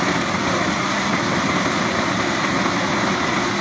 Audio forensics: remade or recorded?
recorded